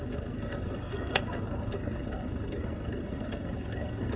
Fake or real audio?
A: fake